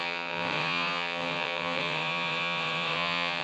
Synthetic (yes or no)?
yes